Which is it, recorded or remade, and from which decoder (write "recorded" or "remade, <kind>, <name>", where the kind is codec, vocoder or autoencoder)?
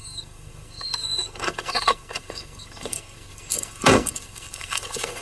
remade, codec, SNAC